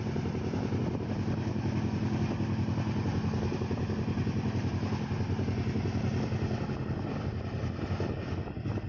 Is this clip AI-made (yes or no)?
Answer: no